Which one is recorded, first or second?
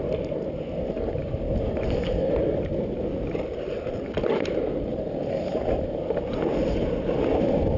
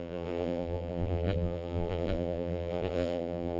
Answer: first